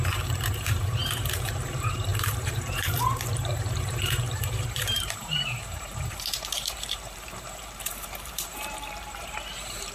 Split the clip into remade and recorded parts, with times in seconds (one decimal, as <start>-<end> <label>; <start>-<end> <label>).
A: 0.0-9.9 remade